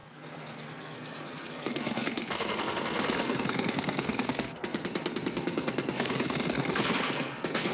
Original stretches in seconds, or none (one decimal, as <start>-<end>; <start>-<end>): none